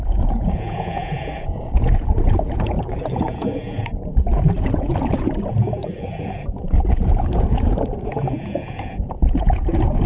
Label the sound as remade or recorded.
remade